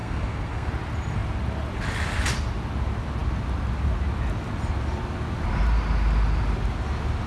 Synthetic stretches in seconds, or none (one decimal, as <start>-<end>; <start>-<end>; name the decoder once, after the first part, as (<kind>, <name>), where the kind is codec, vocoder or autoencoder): 0.0-0.7 (codec, SNAC)